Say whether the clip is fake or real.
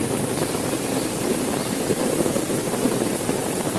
fake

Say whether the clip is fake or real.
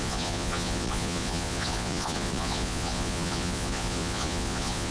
fake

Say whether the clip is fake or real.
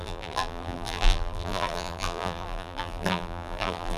fake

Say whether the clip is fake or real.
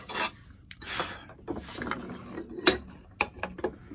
real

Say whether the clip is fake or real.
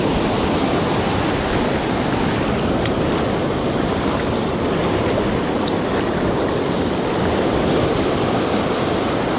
real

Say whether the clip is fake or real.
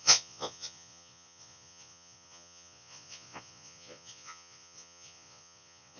fake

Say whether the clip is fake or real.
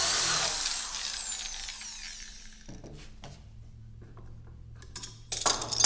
real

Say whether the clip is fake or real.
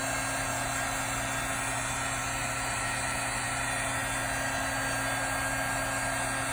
real